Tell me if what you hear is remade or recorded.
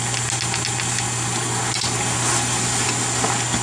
recorded